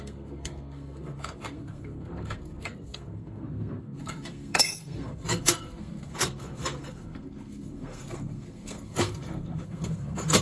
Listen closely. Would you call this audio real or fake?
fake